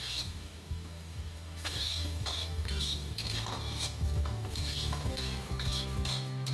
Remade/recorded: remade